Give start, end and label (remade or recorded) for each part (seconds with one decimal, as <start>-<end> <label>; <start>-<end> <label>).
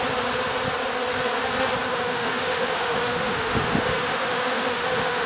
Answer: 0.0-1.9 recorded; 1.9-5.3 remade